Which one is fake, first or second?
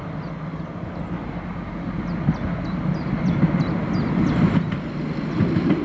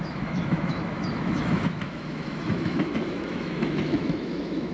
second